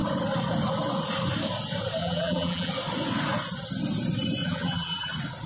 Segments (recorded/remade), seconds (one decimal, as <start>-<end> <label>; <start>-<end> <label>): 0.0-2.0 recorded; 2.0-2.7 remade; 2.7-4.4 recorded; 4.4-5.1 remade; 5.1-5.5 recorded